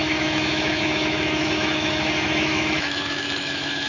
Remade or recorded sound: remade